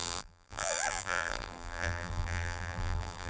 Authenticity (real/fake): fake